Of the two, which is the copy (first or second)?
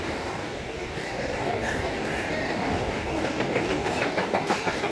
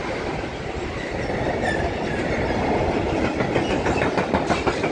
first